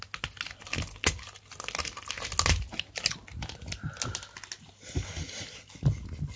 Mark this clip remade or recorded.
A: recorded